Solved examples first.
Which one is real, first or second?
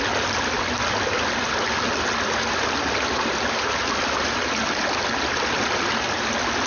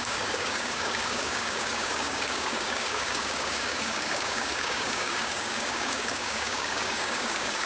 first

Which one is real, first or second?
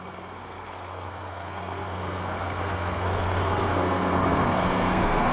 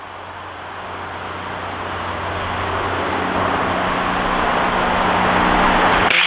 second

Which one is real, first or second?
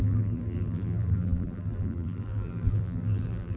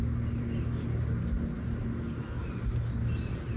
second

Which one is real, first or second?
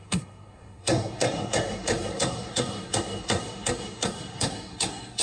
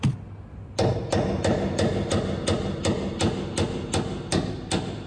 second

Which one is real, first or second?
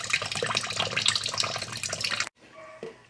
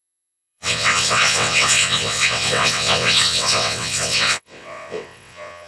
first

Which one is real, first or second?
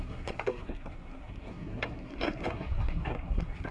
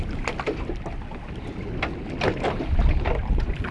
second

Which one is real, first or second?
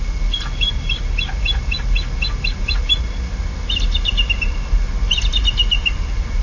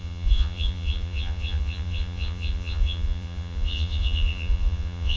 first